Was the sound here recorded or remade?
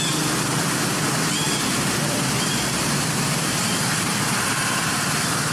recorded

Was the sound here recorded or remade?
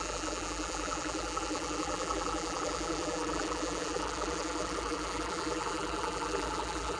remade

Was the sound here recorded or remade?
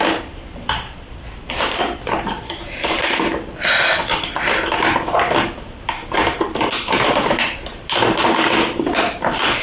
remade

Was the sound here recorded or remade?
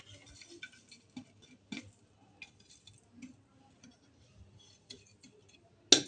recorded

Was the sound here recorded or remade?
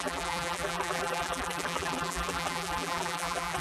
remade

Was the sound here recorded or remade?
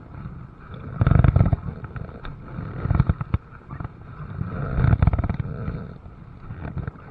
recorded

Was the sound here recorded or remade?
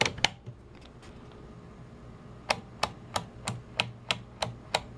recorded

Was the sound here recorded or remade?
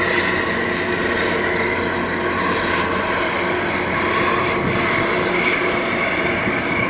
recorded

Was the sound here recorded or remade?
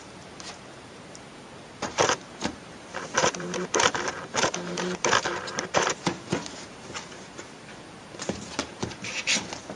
remade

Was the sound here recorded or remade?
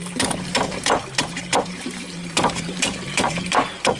remade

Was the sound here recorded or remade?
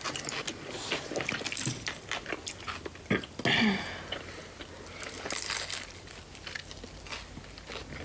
recorded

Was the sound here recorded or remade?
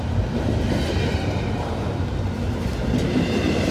recorded